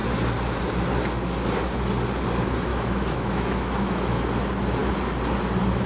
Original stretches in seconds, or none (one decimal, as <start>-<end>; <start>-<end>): 0.0-2.7; 4.2-5.9